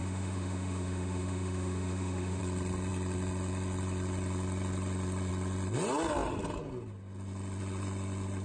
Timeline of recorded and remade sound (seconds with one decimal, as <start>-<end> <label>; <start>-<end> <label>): 0.0-2.4 remade; 2.4-8.4 recorded